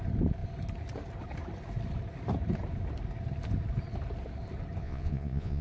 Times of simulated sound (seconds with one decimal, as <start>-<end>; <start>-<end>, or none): 4.8-5.6